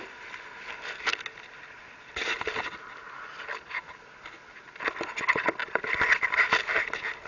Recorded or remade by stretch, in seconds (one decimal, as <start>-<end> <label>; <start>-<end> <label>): 0.0-7.3 recorded